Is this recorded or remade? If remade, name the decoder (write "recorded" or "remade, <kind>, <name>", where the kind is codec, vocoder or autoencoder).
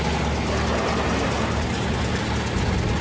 recorded